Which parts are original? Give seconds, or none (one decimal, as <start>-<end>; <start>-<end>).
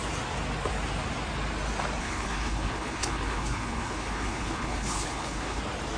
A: 0.0-2.0; 5.6-6.0